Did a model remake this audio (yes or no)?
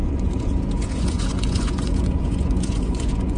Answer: yes